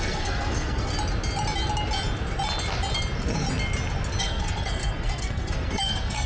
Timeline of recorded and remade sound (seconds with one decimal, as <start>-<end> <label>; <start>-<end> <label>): 0.0-0.9 remade; 0.9-4.2 recorded; 4.2-6.3 remade